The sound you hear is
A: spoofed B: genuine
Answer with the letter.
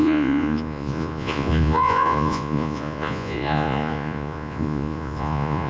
A